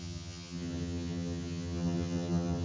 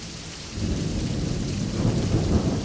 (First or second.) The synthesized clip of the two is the first